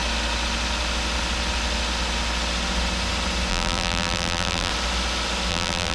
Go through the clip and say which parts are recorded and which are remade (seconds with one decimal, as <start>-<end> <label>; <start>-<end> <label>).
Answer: 0.0-3.5 recorded; 3.5-4.7 remade; 4.7-5.5 recorded; 5.5-5.9 remade